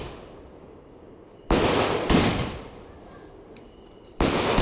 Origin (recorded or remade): recorded